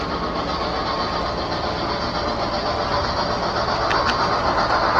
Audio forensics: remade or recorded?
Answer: recorded